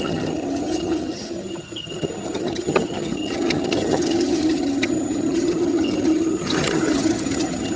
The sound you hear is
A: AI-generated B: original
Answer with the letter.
A